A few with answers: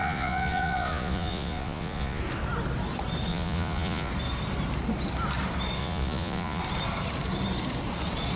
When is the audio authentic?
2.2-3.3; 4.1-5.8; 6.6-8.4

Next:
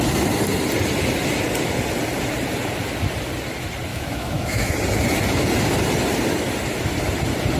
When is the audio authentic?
0.0-3.9; 4.7-7.6